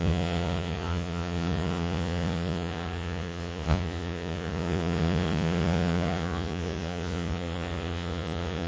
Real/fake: fake